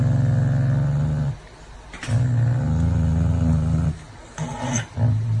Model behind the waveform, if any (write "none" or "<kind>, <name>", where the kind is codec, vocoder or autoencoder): none